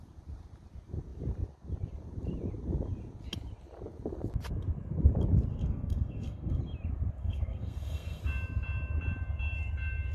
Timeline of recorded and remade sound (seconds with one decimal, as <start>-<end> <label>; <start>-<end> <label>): 0.0-5.5 recorded; 5.5-6.6 remade; 6.6-7.2 recorded; 7.2-8.2 remade; 8.2-10.1 recorded